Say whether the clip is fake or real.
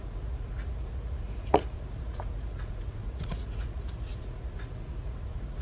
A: fake